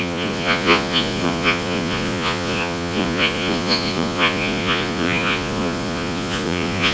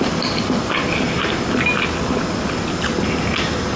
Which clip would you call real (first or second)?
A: second